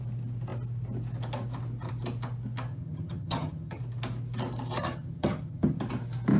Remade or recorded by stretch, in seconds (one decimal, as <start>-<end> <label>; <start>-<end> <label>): 0.0-2.7 recorded; 2.7-3.8 remade; 3.8-4.8 recorded; 4.8-5.8 remade; 5.8-6.4 recorded